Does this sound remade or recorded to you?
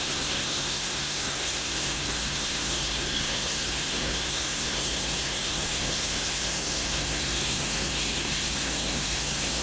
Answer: remade